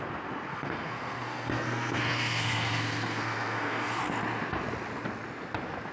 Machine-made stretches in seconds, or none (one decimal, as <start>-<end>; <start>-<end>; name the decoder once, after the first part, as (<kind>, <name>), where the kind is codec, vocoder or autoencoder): 0.5-4.0 (codec, SNAC)